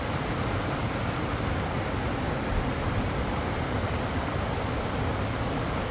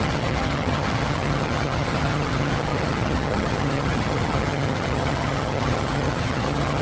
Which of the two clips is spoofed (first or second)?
second